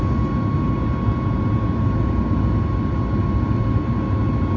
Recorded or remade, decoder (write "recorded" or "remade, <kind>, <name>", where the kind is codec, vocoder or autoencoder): recorded